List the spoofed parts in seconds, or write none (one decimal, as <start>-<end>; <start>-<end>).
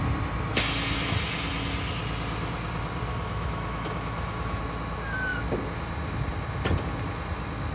3.1-4.6